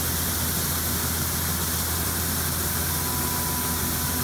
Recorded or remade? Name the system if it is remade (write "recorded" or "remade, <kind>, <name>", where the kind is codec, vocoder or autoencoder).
recorded